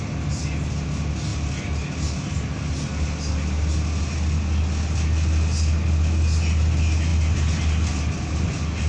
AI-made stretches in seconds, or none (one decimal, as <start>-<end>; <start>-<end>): none